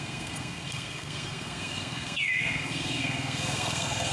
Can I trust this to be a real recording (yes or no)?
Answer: no